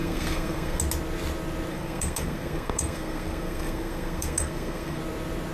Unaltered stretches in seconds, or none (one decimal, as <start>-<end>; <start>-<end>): 0.8-1.7; 5.0-5.5